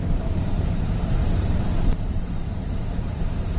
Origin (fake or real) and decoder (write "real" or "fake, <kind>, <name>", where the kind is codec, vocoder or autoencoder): fake, vocoder, BigVGAN v2